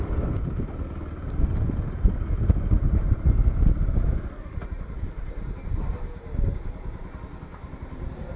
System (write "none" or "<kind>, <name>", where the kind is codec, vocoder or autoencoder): none